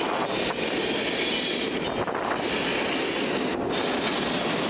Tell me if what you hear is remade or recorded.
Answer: recorded